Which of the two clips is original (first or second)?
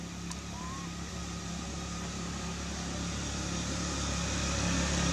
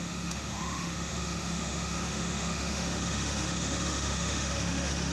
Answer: first